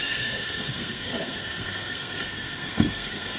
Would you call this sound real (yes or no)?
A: no